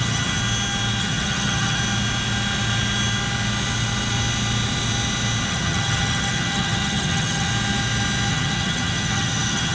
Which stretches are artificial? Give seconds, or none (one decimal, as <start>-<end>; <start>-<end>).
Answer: 0.0-0.4; 1.0-1.8; 5.5-7.5; 8.3-9.7